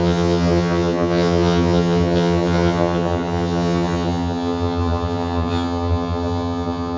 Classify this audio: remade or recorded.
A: remade